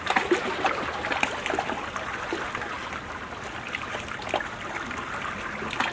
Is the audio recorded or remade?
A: recorded